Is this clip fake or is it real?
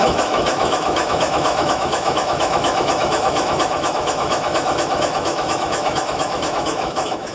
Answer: fake